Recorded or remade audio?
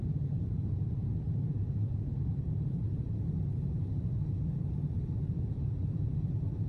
remade